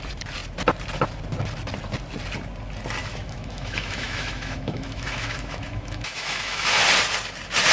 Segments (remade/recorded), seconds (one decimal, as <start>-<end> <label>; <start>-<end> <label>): 0.0-3.0 recorded; 3.0-6.8 remade; 6.8-7.7 recorded